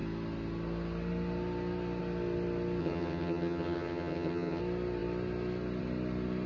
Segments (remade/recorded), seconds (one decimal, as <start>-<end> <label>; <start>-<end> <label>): 0.0-2.8 recorded; 2.8-4.6 remade; 4.6-6.5 recorded